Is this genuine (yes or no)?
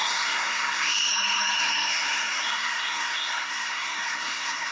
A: no